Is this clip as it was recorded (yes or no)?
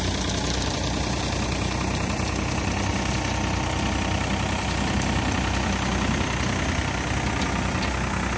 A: yes